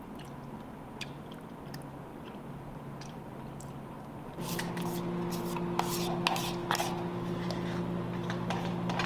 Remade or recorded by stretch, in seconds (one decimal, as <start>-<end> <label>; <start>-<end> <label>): 0.0-2.1 recorded; 2.1-4.7 remade; 4.7-9.1 recorded